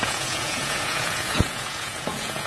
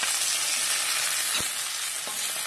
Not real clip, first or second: first